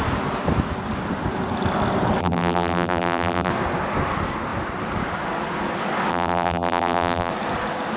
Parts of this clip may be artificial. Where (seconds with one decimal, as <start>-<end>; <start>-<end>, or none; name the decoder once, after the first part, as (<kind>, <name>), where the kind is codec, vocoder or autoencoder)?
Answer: 2.2-3.5 (vocoder, BigVGAN v2); 6.1-7.3